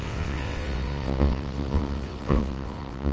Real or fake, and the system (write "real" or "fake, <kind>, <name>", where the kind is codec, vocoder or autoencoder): fake, vocoder, WaveNeXt